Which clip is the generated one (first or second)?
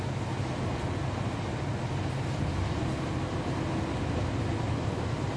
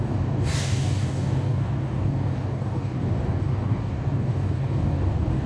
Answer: second